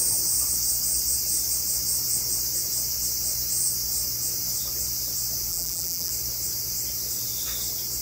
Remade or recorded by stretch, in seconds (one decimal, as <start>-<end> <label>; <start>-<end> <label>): 0.0-5.5 recorded; 5.5-6.1 remade; 6.1-8.0 recorded